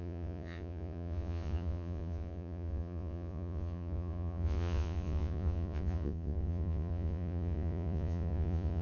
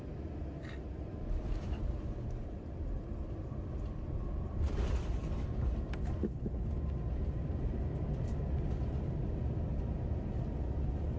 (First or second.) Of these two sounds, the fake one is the first